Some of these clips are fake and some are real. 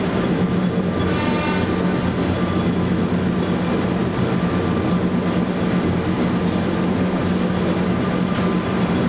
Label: real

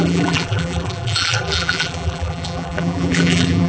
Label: fake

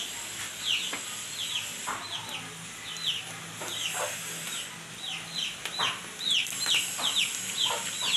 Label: real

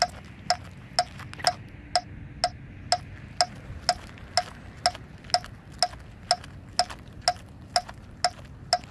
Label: real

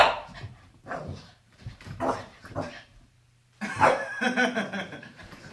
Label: fake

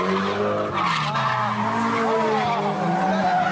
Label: real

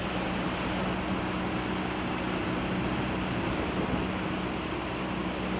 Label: real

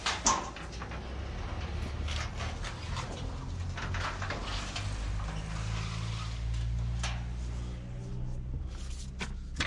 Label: real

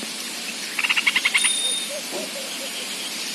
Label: real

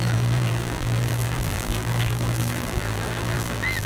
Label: fake